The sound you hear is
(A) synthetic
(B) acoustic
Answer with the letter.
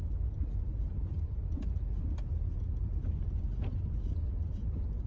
B